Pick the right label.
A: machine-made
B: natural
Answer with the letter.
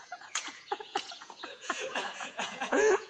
A